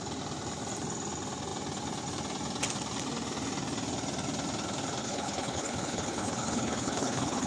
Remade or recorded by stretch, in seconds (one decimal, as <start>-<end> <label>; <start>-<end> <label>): 0.0-5.0 recorded; 5.0-7.5 remade